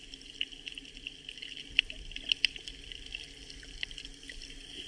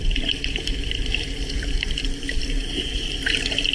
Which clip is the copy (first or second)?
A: second